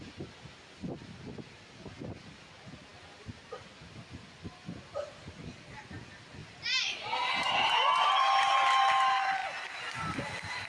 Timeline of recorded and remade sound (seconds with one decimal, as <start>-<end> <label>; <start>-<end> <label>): 0.0-6.4 recorded; 6.4-8.2 remade; 8.2-10.7 recorded